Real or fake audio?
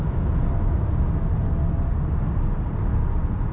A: real